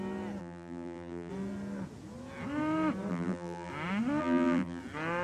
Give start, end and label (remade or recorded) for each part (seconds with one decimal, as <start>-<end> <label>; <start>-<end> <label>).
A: 0.0-0.4 recorded; 0.4-1.3 remade; 1.3-3.1 recorded; 3.1-3.7 remade; 3.7-4.2 recorded; 4.2-4.8 remade; 4.8-5.2 recorded